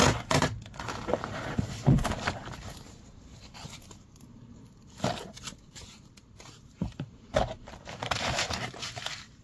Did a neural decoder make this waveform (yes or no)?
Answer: yes